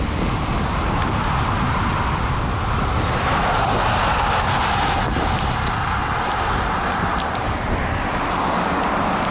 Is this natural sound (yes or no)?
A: yes